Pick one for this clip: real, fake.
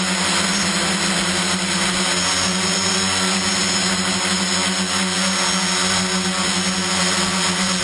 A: real